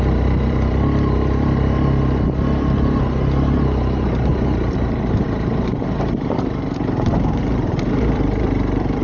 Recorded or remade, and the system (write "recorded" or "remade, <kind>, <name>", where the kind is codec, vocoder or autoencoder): remade, vocoder, BigVGAN v2